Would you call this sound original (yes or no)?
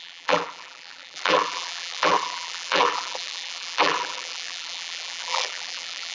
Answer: no